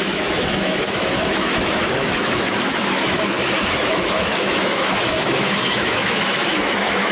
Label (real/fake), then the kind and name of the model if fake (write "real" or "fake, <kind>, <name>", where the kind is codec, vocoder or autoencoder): fake, autoencoder, DAC-VAE